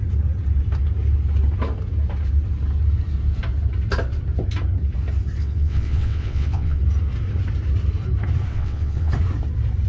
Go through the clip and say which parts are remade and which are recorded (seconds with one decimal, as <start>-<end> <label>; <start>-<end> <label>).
0.0-5.4 recorded; 5.4-6.8 remade; 6.8-8.5 recorded; 8.5-9.1 remade; 9.1-9.9 recorded